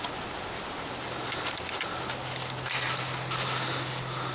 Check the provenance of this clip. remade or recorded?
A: recorded